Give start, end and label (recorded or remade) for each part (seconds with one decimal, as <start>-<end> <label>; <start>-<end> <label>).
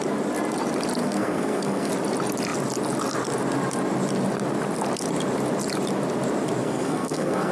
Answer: 0.0-1.0 recorded; 1.0-1.9 remade; 1.9-6.6 recorded; 6.6-7.5 remade